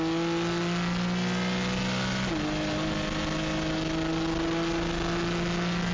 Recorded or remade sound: recorded